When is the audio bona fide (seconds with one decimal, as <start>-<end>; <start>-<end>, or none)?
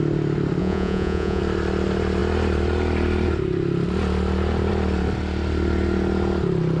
0.0-0.6; 1.4-6.8